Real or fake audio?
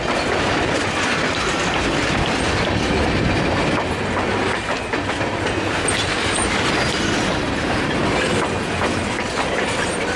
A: real